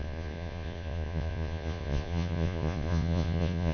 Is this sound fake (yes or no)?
yes